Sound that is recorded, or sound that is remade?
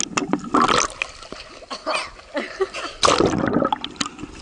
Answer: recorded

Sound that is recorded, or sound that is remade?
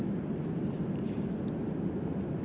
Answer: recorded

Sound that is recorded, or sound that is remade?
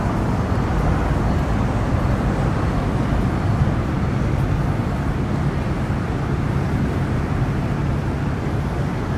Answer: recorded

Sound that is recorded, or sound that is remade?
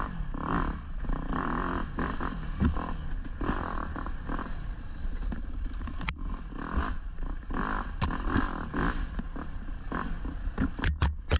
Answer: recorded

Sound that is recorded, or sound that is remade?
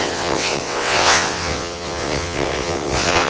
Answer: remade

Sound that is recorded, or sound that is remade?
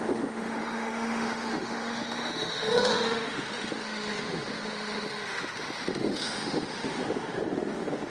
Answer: remade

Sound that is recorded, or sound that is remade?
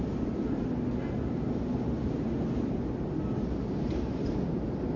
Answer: recorded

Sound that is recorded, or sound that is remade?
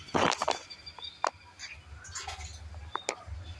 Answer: recorded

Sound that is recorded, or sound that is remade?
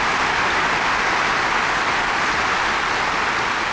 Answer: recorded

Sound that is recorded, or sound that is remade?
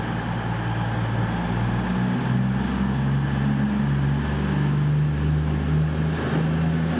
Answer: recorded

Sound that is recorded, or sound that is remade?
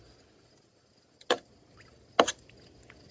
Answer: recorded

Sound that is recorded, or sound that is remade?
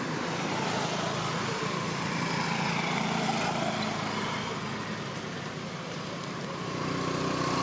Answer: recorded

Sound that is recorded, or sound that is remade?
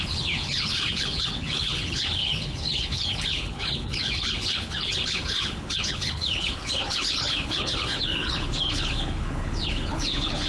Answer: remade